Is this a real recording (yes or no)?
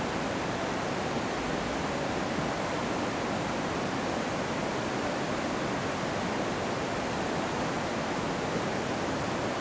yes